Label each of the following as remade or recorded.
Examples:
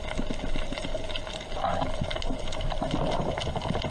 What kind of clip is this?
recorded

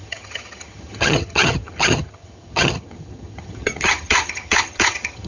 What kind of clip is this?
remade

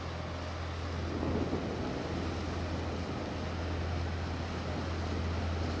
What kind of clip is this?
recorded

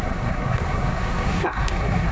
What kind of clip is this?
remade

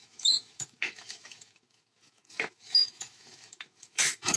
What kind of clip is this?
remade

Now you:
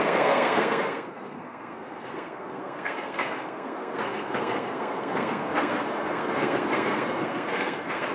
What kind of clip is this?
remade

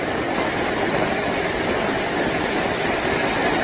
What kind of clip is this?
recorded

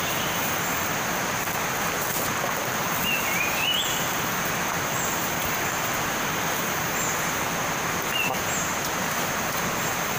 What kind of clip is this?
recorded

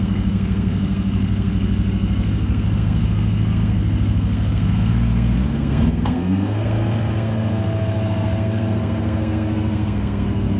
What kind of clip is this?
remade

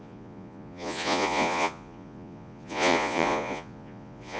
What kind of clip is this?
remade